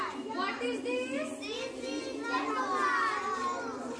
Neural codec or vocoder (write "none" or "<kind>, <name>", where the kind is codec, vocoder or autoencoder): none